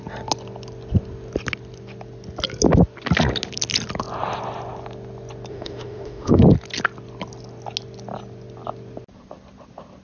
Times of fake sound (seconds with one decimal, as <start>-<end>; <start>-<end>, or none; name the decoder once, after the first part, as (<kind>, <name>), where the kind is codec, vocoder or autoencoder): 5.5-6.4 (autoencoder, DAC-VAE)